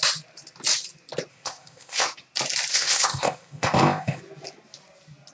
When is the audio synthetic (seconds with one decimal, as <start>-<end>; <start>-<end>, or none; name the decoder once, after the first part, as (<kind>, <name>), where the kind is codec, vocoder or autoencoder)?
1.3-2.1 (codec, ZipCodec); 2.7-4.2